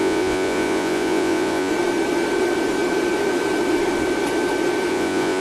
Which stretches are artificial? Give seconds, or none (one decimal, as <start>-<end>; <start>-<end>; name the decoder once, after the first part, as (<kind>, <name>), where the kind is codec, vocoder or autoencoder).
0.0-1.7 (vocoder, Vocos); 4.9-5.4